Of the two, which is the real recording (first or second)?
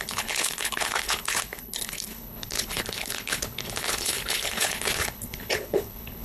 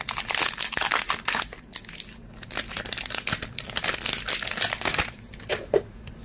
second